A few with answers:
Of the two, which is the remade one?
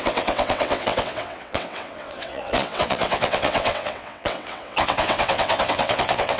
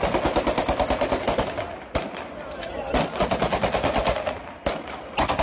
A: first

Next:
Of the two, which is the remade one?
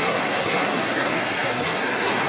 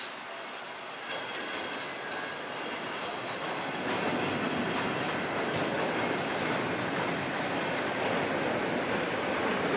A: first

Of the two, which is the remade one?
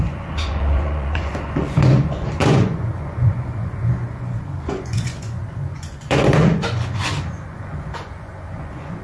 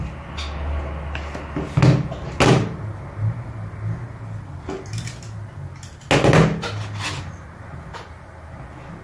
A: first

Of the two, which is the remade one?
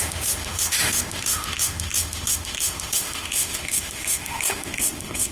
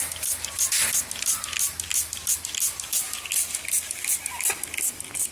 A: first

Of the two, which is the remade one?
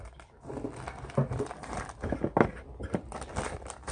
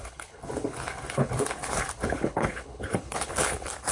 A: second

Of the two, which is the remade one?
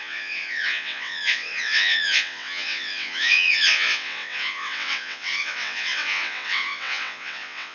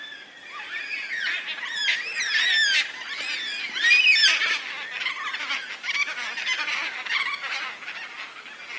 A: first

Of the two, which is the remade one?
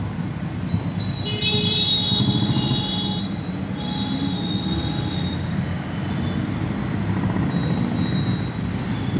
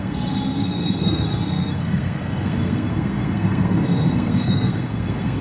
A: second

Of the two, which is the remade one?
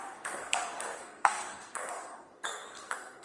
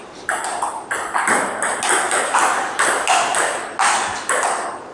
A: first